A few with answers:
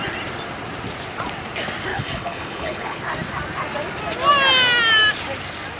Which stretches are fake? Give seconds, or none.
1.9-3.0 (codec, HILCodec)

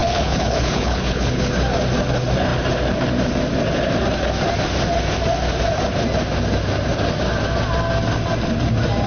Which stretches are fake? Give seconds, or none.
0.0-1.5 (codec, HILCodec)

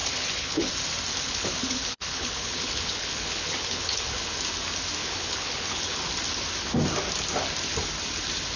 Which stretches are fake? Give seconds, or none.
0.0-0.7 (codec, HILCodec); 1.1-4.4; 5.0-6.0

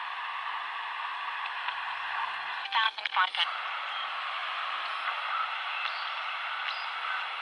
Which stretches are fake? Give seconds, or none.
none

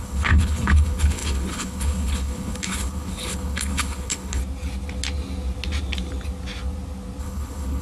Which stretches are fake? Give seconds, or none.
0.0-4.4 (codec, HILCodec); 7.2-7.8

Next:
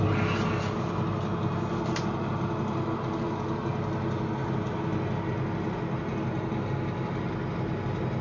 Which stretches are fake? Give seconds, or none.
none

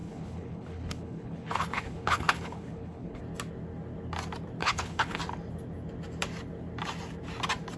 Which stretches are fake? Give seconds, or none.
0.0-3.2 (codec, HILCodec); 4.6-5.2